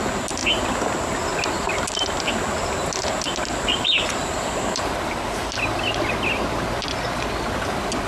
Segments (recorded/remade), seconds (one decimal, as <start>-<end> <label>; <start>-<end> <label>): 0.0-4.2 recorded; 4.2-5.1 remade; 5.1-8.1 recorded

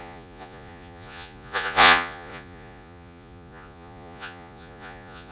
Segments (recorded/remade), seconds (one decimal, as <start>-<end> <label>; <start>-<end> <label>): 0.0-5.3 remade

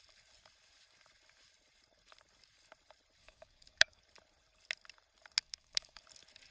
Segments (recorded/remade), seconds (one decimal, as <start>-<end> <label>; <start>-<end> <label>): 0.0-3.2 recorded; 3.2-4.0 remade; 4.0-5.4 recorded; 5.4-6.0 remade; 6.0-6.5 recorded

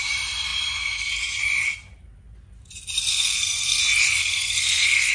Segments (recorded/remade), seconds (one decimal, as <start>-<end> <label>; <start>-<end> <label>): 0.0-3.1 recorded; 3.1-3.8 remade; 3.8-4.2 recorded; 4.2-5.1 remade